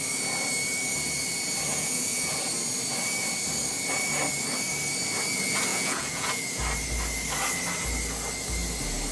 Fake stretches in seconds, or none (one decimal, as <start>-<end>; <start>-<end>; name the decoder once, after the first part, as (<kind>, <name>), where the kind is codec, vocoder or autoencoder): 1.7-2.4 (vocoder, Vocos); 5.7-6.4